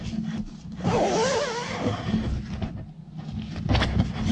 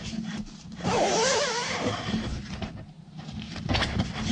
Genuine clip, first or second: first